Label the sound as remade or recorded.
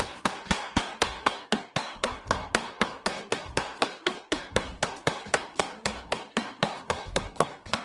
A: remade